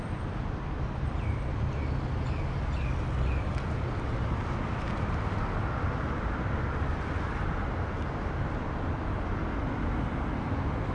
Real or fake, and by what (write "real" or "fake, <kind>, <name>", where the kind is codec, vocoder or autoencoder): real